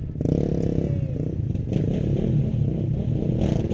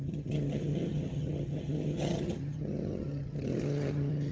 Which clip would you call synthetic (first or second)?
second